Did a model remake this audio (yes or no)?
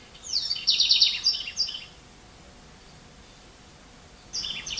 no